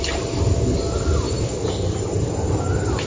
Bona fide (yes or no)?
yes